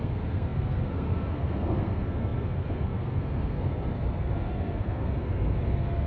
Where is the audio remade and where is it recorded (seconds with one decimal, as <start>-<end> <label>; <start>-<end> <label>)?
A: 0.0-6.1 remade